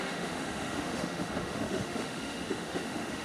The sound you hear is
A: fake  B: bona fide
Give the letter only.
A